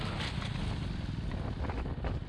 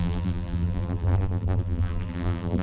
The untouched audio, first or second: first